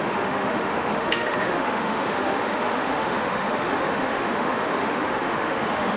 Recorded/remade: remade